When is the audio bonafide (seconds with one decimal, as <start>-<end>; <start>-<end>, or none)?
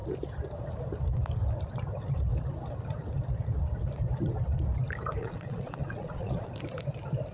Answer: 0.0-5.2; 6.5-7.3